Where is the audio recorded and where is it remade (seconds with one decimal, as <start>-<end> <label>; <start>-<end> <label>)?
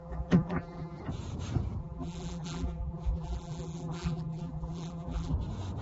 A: 0.0-1.0 remade; 1.0-1.8 recorded; 1.8-5.3 remade; 5.3-5.8 recorded